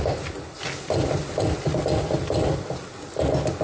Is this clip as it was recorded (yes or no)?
yes